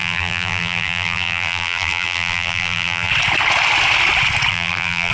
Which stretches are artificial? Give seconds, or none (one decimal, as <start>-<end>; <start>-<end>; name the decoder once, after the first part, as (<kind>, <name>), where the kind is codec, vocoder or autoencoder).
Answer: 0.0-3.1 (vocoder, BigVGAN v2); 4.5-5.1